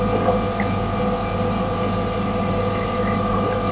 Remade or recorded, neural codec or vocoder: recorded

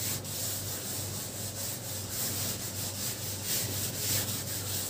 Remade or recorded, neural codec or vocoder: recorded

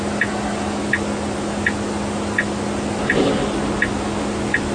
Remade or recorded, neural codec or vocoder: recorded